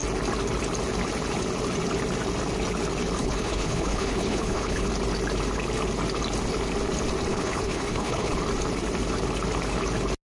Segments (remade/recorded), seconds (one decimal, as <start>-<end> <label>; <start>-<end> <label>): 0.0-3.2 recorded; 3.2-4.9 remade; 4.9-7.3 recorded; 7.3-8.3 remade; 8.3-10.3 recorded